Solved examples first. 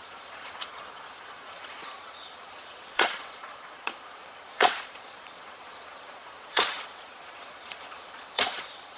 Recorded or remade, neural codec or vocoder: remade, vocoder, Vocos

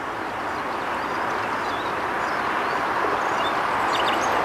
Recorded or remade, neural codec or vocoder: recorded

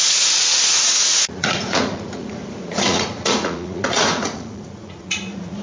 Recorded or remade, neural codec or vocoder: remade, vocoder, Vocos